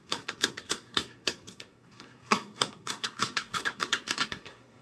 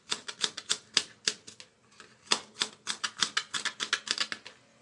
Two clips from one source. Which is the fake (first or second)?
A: first